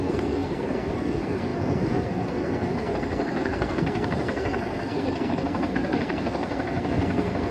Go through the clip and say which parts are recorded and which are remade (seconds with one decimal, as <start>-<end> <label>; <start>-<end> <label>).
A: 0.0-7.5 remade